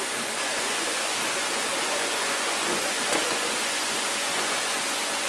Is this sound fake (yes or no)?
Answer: yes